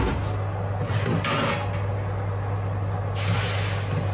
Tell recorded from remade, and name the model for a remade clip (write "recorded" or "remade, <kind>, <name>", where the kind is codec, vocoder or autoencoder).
recorded